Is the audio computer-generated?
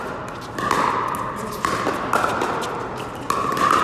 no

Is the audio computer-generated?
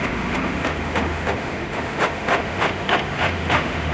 yes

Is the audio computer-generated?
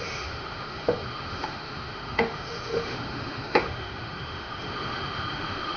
yes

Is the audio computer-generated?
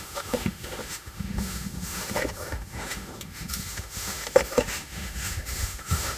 yes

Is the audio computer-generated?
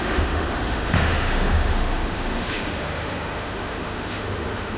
yes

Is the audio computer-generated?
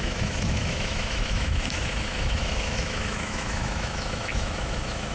yes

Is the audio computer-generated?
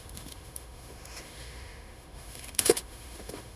yes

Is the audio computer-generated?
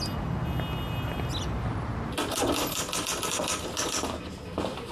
no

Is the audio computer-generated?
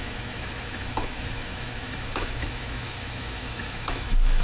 yes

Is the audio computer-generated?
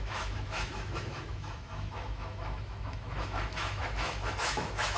yes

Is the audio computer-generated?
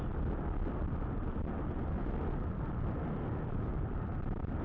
no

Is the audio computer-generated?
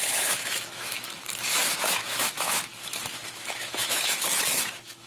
yes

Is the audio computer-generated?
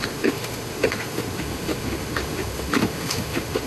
yes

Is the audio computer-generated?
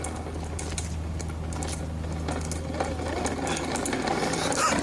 no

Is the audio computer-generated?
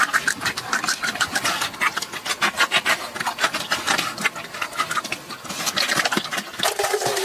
no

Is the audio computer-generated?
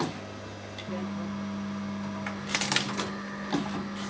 no